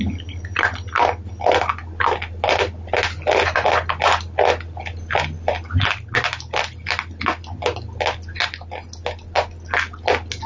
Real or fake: real